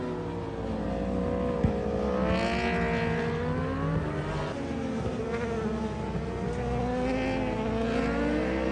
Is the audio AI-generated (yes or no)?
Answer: no